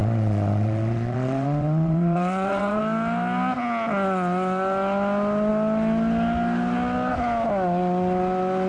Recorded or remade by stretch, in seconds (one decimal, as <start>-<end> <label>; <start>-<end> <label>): 0.0-2.8 remade; 2.8-8.7 recorded